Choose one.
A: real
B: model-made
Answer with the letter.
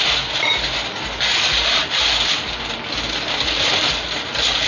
A